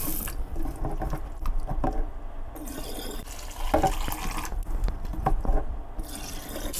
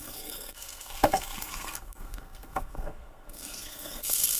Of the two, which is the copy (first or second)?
second